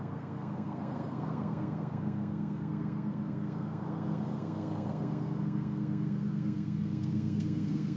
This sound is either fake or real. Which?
fake